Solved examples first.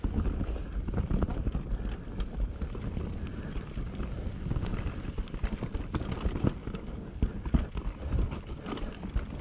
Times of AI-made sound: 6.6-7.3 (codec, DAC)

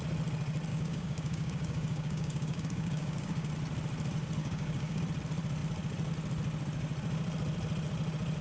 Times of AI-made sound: 0.7-3.5 (codec, DAC); 4.4-5.0

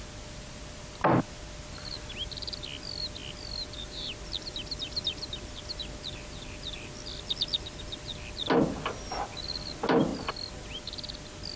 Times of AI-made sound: none

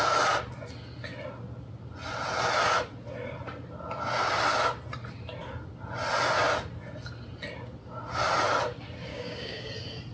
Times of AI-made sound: 9.1-9.7 (codec, DAC)

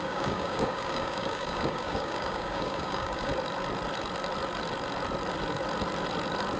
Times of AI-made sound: 0.0-3.3 (codec, DAC)

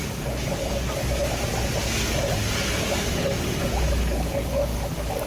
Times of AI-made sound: 0.0-1.2 (codec, DAC); 2.8-5.3

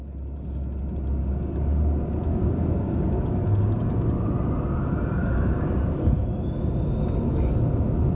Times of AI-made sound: 1.2-1.8 (codec, DAC); 2.3-4.1; 5.2-7.6

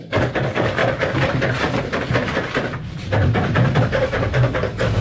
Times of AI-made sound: 0.0-0.8 (codec, DAC); 3.8-5.0